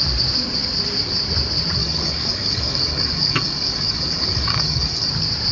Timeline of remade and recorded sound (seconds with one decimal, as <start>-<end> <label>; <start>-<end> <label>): 0.0-1.8 recorded; 1.8-5.1 remade; 5.1-5.5 recorded